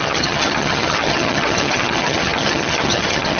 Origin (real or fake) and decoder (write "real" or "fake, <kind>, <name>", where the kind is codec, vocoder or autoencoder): fake, vocoder, HiFi-GAN